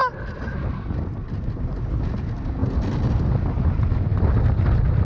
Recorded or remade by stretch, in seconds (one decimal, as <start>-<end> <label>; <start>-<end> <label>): 0.0-5.0 recorded